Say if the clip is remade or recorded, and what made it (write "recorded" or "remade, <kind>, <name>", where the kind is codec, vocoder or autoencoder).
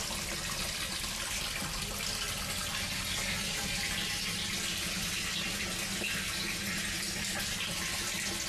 recorded